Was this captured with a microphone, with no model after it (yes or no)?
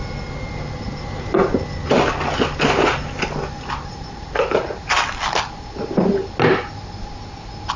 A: yes